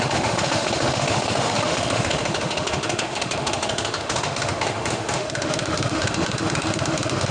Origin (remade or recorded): remade